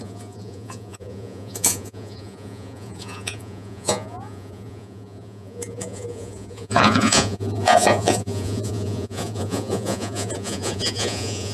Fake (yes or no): yes